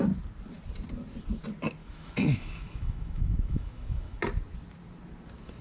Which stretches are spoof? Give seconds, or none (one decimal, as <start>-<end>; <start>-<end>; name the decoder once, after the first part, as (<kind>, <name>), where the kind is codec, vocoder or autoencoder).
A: 1.8-4.2 (autoencoder, DAC-VAE)